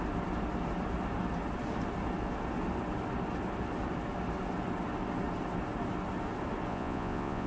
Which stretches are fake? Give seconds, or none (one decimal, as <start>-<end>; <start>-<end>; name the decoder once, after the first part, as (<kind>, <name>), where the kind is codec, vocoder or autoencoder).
6.7-7.5 (vocoder, Vocos)